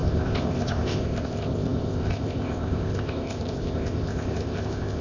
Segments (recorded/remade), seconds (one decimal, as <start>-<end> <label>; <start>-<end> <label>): 0.0-5.0 remade